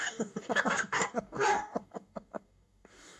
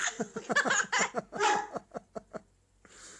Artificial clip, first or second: first